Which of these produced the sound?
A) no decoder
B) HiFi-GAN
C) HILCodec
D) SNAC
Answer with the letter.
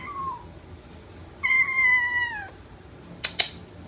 A